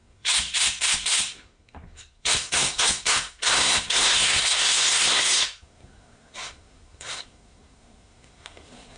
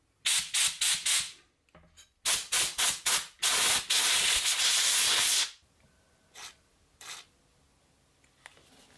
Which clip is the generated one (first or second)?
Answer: first